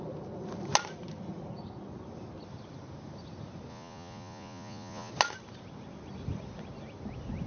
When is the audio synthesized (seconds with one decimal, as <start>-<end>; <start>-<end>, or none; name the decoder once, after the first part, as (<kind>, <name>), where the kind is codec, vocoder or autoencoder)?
3.7-5.1 (vocoder, Vocos)